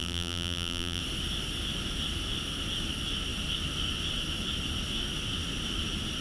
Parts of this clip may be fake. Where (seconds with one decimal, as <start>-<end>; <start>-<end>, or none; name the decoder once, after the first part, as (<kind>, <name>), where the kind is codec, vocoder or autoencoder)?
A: 0.0-1.0 (vocoder, BigVGAN v2)